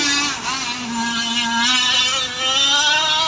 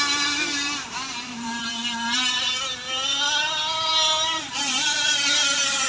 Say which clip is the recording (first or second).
first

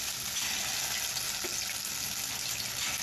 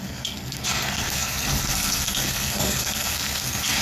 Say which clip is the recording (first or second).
first